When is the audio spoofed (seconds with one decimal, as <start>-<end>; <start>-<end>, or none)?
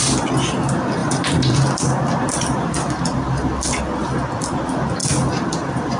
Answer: 1.0-3.8; 5.0-6.0